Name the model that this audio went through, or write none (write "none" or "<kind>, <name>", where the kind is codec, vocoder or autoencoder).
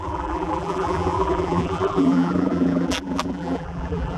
vocoder, BigVGAN v2